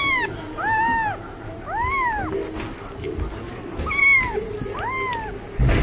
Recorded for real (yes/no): yes